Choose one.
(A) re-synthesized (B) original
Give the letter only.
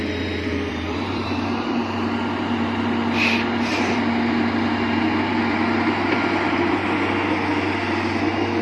A